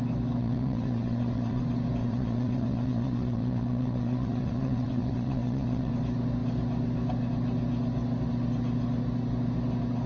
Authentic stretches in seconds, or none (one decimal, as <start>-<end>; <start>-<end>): 0.0-0.4; 1.6-2.0; 5.9-10.1